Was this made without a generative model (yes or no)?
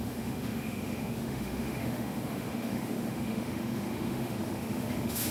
no